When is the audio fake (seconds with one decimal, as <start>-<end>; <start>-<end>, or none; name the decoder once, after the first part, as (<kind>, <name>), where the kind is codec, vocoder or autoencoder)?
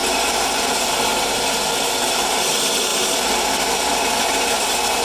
0.0-1.0 (vocoder, BigVGAN v2); 2.9-4.2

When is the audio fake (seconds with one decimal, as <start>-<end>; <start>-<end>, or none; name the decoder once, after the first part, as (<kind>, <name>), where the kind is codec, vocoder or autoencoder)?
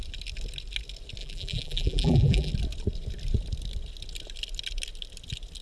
1.2-2.5 (vocoder, BigVGAN v2)